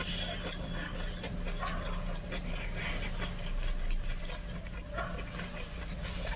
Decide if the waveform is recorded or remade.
recorded